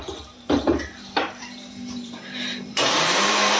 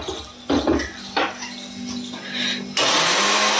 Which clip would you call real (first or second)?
second